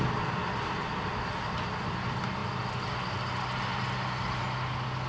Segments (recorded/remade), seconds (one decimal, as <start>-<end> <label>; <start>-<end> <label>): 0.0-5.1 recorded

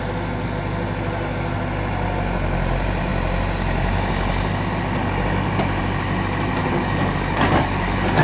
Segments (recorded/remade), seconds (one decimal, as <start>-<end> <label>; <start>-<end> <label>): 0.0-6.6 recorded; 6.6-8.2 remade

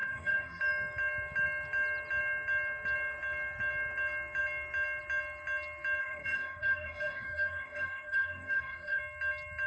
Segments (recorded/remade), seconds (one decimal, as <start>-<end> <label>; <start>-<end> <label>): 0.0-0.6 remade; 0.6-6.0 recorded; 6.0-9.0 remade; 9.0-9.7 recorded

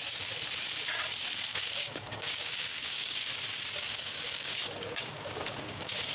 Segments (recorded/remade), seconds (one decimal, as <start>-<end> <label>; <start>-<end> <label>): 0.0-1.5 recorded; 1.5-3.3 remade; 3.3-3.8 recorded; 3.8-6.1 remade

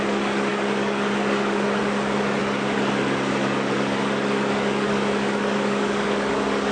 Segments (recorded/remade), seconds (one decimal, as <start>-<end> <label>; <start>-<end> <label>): 0.0-6.7 remade

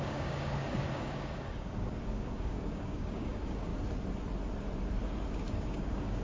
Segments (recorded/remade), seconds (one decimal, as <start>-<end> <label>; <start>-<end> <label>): 0.0-3.7 remade; 3.7-5.4 recorded; 5.4-6.2 remade

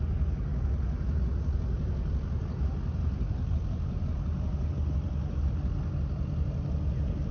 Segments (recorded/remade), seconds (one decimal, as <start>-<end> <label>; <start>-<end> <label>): 0.0-7.3 recorded